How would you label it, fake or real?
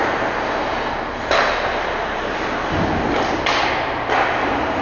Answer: real